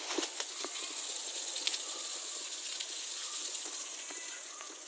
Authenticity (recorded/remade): remade